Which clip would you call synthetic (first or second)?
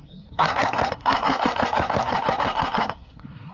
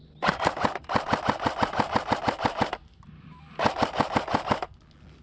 first